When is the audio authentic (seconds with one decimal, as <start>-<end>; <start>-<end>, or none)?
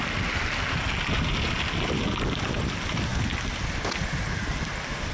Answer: 0.0-5.1